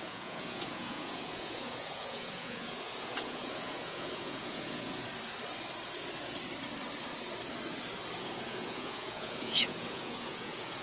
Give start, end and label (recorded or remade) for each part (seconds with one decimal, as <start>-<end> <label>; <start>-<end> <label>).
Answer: 0.0-5.0 remade; 5.0-8.2 recorded; 8.2-10.8 remade